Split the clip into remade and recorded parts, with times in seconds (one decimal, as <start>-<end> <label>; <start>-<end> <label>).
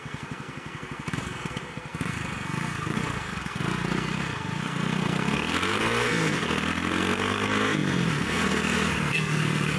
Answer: 0.0-9.8 remade